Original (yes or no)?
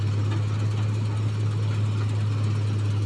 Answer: yes